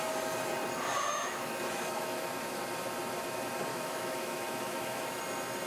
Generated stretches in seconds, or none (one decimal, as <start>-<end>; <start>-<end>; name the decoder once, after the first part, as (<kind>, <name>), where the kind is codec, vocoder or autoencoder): 1.1-2.6 (autoencoder, DAC-VAE); 3.7-5.2